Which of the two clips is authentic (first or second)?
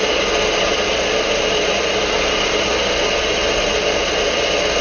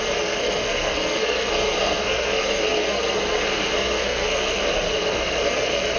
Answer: first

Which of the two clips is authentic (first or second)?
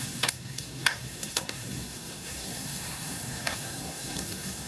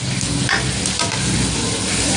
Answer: second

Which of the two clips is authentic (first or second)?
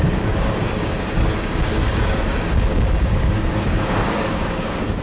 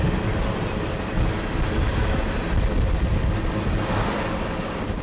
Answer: second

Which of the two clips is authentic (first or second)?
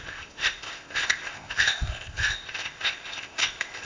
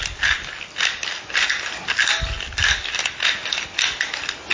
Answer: second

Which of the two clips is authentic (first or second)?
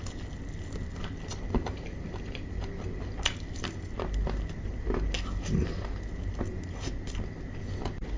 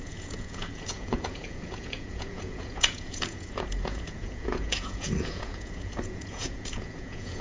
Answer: first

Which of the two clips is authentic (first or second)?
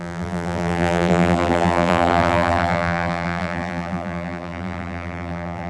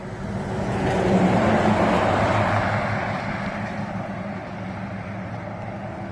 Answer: second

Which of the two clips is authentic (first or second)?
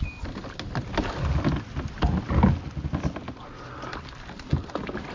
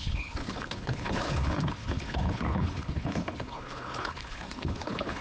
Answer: first